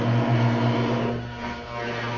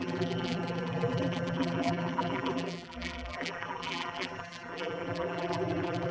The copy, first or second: second